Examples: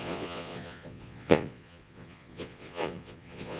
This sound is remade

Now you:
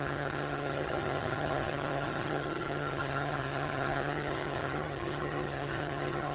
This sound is remade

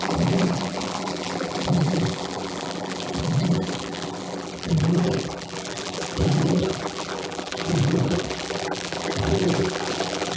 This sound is remade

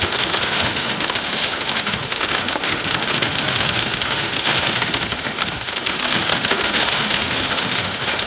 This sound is remade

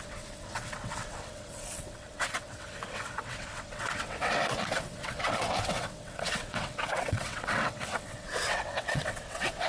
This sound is remade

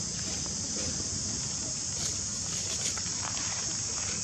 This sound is recorded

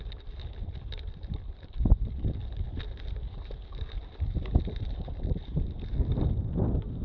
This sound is remade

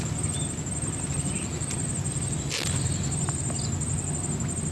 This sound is recorded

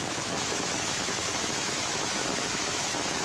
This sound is remade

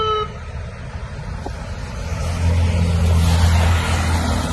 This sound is recorded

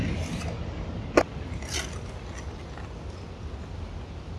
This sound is recorded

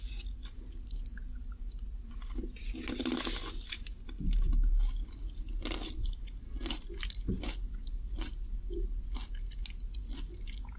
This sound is recorded